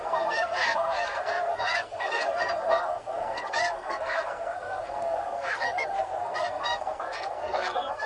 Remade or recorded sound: remade